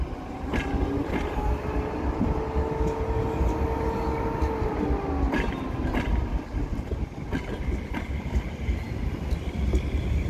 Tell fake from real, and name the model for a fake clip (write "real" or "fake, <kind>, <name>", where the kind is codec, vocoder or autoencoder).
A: real